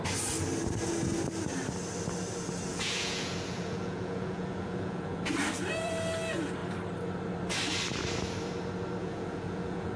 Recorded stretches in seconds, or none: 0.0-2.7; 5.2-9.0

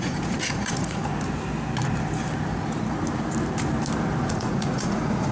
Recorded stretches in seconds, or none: 1.1-4.3

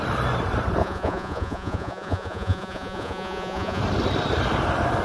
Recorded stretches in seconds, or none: 0.0-0.8; 3.8-5.0

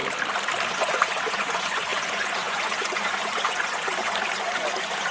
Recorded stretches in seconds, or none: 0.0-0.7

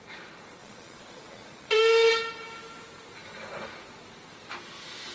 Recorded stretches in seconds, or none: 0.0-0.6; 1.8-5.1

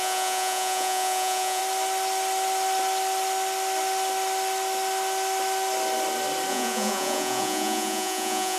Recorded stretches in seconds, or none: 1.6-6.5

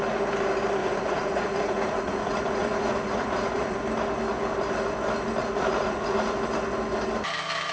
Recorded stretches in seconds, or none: 0.0-0.8; 3.8-5.4; 6.3-7.7